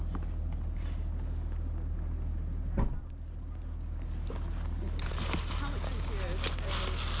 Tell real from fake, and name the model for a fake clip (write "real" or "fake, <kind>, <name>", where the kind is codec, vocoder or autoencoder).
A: real